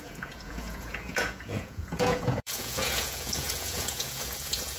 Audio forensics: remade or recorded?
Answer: remade